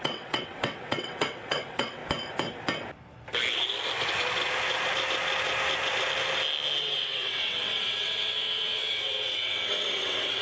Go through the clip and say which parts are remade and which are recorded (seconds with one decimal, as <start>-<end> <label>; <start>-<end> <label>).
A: 0.0-2.0 remade; 2.0-6.8 recorded; 6.8-10.4 remade